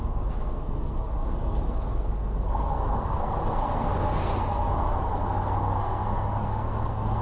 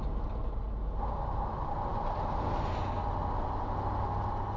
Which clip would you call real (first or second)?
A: second